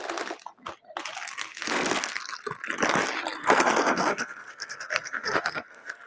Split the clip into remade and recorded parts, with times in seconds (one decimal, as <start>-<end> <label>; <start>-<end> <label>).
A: 0.0-1.4 recorded; 1.4-2.2 remade; 2.2-3.4 recorded; 3.4-6.1 remade

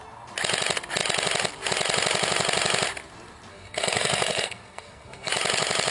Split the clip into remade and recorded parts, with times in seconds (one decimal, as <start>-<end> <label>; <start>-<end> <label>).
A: 0.0-3.5 recorded; 3.5-5.3 remade; 5.3-5.9 recorded

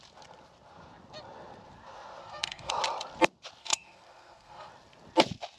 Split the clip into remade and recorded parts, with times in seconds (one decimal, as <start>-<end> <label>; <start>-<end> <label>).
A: 0.0-2.2 recorded; 2.2-2.7 remade; 2.7-3.6 recorded; 3.6-4.7 remade; 4.7-5.6 recorded

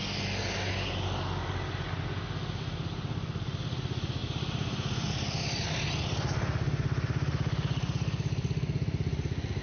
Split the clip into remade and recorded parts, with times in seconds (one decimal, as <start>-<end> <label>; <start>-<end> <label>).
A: 0.0-9.6 recorded

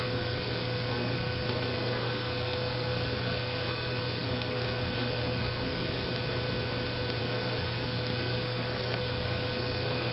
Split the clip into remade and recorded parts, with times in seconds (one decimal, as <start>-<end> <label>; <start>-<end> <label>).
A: 0.0-6.1 remade; 6.1-7.2 recorded; 7.2-10.1 remade

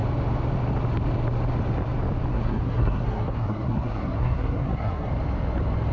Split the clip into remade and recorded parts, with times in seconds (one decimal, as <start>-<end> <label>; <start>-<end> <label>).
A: 0.0-2.3 recorded; 2.3-5.1 remade; 5.1-5.9 recorded

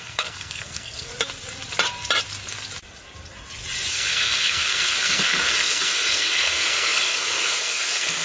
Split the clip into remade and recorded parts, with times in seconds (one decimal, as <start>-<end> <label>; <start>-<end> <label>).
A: 0.0-1.1 remade; 1.1-3.9 recorded; 3.9-8.2 remade